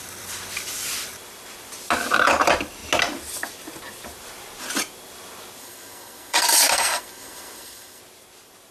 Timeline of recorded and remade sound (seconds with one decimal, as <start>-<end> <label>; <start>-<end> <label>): 0.0-5.6 recorded; 5.6-8.0 remade; 8.0-8.7 recorded